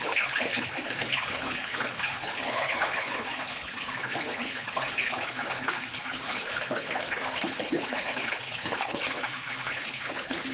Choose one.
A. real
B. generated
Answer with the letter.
B